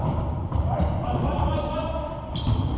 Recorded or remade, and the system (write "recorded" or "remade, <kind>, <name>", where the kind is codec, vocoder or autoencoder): recorded